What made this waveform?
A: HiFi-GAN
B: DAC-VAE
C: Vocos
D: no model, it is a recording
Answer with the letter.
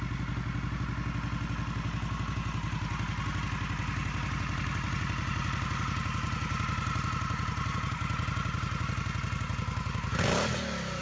D